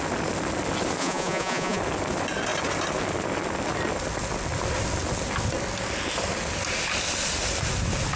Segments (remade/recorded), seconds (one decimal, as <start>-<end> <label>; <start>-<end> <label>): 0.0-1.0 recorded; 1.0-1.8 remade; 1.8-8.2 recorded